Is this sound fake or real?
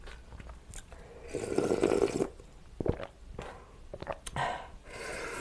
real